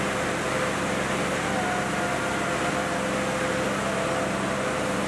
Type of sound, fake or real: real